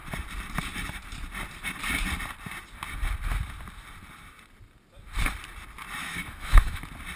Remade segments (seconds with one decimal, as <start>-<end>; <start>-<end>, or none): 6.0-6.8